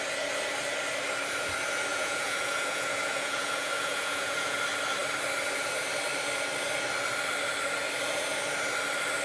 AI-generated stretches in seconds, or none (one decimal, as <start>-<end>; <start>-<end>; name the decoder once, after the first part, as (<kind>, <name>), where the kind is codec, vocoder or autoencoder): 1.9-4.6 (vocoder, Vocos)